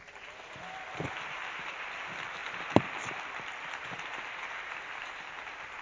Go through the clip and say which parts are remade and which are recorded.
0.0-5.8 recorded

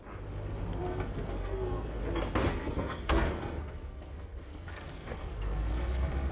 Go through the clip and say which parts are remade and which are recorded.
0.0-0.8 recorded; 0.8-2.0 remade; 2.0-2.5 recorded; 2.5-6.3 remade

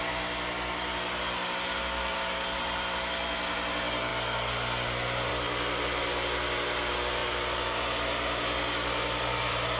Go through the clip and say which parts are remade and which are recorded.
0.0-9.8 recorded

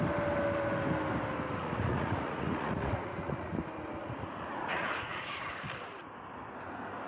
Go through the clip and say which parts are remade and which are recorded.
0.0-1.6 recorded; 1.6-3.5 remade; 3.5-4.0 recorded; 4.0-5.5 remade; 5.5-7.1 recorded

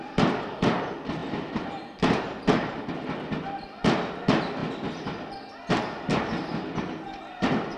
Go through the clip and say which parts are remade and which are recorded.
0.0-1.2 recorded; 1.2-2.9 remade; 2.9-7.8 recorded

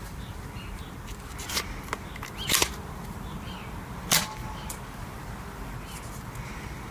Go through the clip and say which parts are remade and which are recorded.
0.0-6.9 recorded

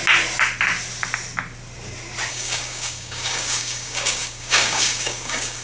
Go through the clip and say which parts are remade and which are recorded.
0.0-2.3 recorded; 2.3-5.6 remade